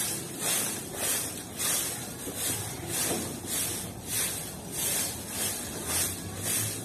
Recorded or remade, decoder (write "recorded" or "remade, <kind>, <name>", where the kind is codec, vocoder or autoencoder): recorded